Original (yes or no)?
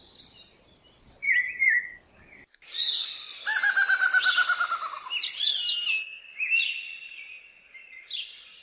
yes